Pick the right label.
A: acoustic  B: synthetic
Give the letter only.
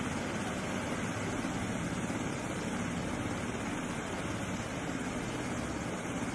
A